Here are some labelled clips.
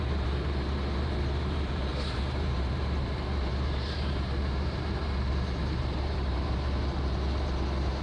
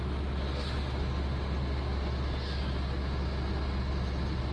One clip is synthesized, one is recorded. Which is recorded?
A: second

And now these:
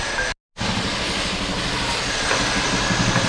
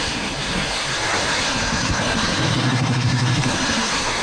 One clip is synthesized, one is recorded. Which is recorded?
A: first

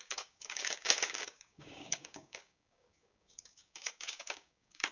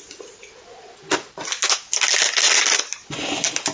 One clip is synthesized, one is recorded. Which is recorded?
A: second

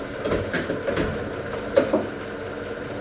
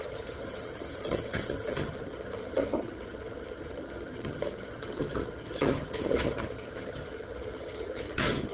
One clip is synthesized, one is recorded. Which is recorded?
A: first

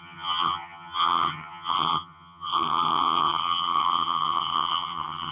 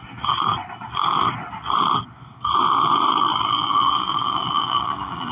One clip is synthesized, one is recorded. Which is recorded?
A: second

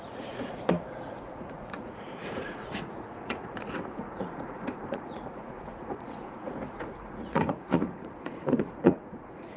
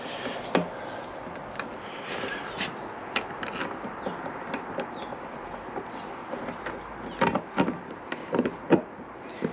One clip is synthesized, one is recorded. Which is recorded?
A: second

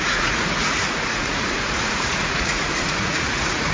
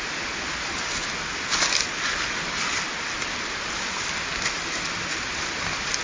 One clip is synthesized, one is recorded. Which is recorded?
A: second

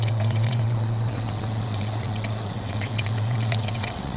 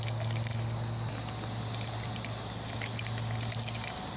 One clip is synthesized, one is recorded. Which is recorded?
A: second